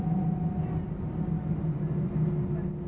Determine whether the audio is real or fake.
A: real